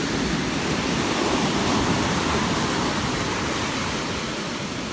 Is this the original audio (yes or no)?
no